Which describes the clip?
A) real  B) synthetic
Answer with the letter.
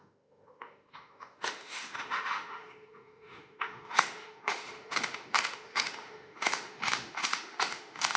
B